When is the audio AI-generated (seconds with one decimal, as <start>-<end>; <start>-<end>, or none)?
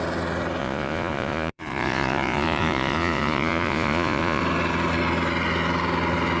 0.6-4.4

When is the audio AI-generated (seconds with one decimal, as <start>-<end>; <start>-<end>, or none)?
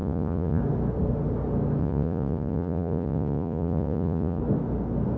0.0-0.6; 1.8-4.4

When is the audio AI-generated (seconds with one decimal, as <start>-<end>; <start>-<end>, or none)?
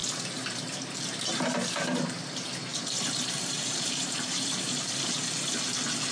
2.7-5.1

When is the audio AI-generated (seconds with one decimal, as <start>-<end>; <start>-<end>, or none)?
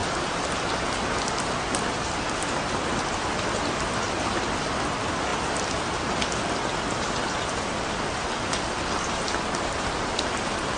0.0-0.6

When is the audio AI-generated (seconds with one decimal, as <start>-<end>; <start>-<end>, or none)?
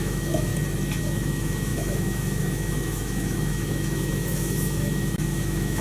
0.0-0.5; 1.0-5.8